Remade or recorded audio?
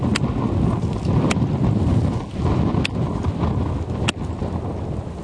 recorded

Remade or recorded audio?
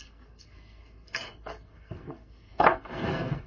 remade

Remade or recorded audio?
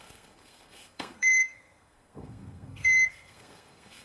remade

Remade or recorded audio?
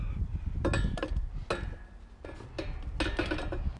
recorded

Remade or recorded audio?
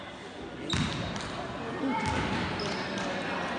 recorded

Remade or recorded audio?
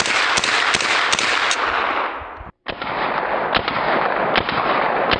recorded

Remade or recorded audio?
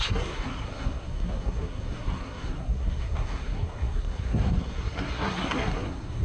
remade